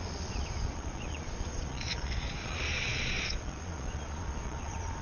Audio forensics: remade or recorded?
remade